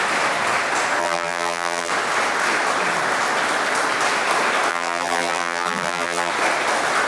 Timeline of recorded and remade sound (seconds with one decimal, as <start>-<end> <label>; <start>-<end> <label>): 0.0-1.0 recorded; 1.0-1.9 remade; 1.9-4.7 recorded; 4.7-6.3 remade; 6.3-7.1 recorded